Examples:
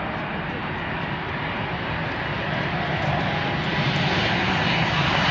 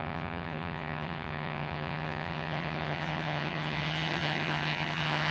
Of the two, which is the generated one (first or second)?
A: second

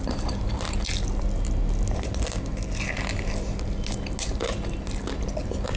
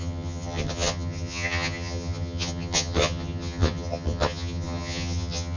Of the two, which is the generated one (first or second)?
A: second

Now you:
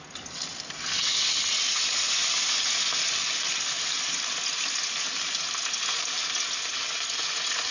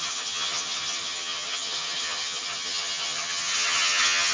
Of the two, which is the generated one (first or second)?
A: second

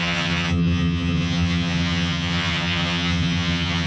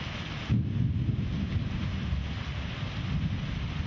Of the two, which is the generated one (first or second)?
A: first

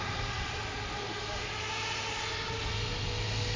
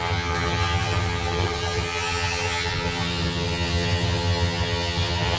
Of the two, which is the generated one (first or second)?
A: second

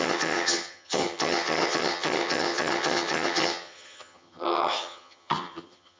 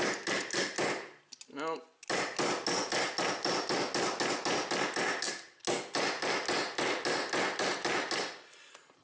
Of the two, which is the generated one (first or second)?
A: first